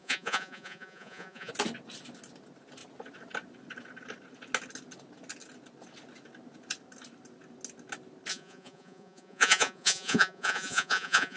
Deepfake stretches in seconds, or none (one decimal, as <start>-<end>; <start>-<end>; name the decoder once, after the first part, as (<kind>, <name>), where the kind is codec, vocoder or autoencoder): 0.0-1.5 (vocoder, Vocos); 8.3-11.4